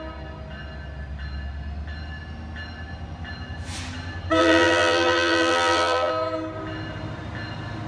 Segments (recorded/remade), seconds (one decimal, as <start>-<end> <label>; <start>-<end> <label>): 0.0-4.4 recorded; 4.4-6.1 remade; 6.1-7.9 recorded